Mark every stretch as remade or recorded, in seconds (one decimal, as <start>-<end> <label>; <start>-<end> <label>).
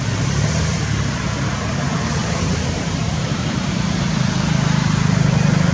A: 0.0-2.2 recorded; 2.2-3.9 remade; 3.9-5.7 recorded